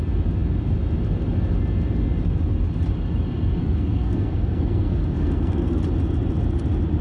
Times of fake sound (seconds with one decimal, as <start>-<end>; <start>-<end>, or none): 3.6-5.8